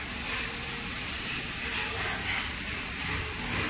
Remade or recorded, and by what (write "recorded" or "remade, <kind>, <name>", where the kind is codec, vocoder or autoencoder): recorded